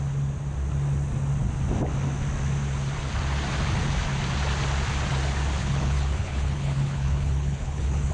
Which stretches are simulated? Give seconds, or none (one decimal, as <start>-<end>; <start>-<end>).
5.6-8.1